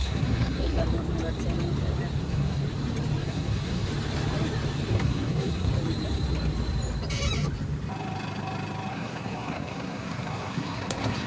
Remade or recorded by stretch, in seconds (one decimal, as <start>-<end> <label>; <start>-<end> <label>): 0.0-0.8 remade; 0.8-2.2 recorded; 2.2-2.6 remade; 2.6-3.2 recorded; 3.2-3.9 remade; 3.9-4.9 recorded; 4.9-5.7 remade; 5.7-8.9 recorded; 8.9-11.3 remade